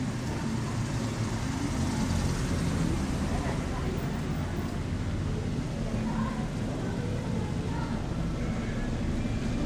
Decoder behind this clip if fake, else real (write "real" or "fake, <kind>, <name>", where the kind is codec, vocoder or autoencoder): real